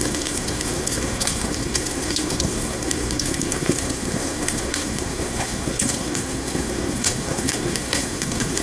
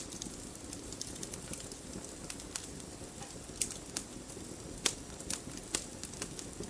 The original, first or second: second